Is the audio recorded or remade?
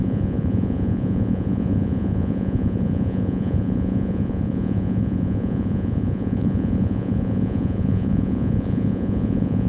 remade